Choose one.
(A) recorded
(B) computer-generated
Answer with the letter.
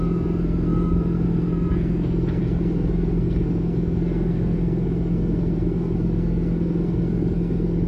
B